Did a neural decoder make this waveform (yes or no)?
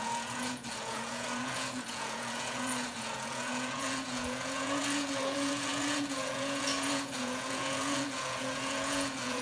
yes